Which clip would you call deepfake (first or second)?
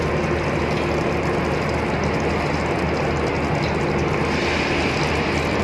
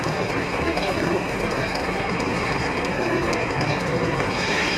second